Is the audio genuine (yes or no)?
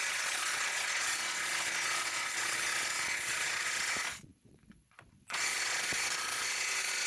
no